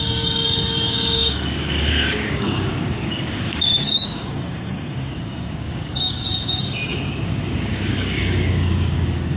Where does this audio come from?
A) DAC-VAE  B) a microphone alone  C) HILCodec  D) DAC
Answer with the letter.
D